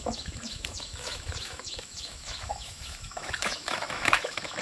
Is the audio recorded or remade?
remade